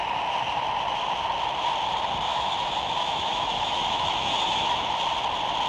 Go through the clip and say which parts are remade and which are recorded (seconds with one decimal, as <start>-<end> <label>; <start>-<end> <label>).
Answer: 0.0-2.3 recorded; 2.3-4.9 remade; 4.9-5.7 recorded